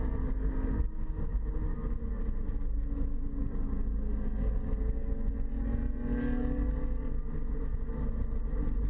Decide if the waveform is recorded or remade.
recorded